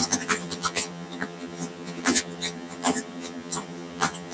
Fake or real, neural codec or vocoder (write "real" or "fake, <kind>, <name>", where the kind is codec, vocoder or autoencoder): fake, vocoder, HiFi-GAN